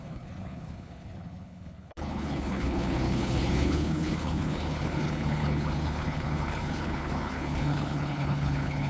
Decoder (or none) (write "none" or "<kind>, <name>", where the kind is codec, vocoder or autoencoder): codec, HILCodec